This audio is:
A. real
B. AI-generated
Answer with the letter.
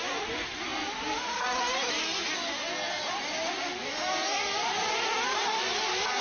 A